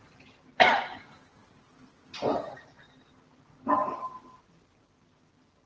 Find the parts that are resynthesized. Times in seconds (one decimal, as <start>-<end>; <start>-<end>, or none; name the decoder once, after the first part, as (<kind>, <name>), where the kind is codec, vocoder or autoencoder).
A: none